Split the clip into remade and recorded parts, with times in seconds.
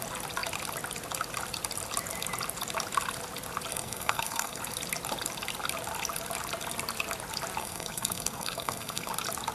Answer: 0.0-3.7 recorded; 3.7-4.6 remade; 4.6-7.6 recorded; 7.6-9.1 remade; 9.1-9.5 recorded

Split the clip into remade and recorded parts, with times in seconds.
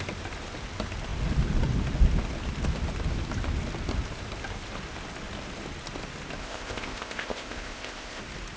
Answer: 0.0-6.4 recorded; 6.4-8.2 remade; 8.2-8.6 recorded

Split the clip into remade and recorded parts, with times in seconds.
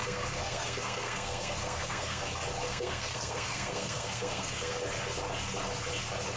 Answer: 0.0-2.2 remade; 2.2-2.7 recorded; 2.7-4.8 remade; 4.8-6.4 recorded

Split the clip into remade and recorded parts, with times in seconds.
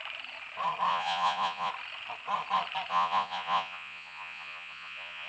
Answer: 0.0-0.9 recorded; 0.9-1.7 remade; 1.7-2.9 recorded; 2.9-5.3 remade